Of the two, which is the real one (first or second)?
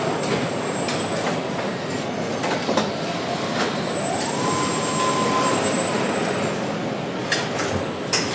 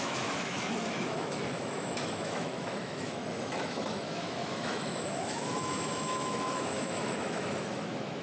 first